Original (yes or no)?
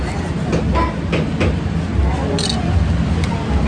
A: yes